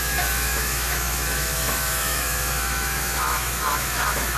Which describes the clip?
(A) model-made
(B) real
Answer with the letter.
A